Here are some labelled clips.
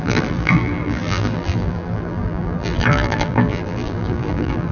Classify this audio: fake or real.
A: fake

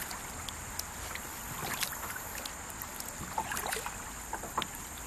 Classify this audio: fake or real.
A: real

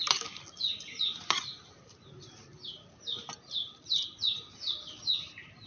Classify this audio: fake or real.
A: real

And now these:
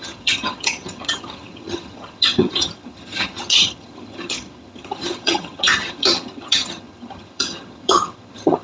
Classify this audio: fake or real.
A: fake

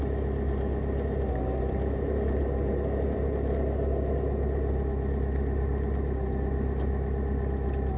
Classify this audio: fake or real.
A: real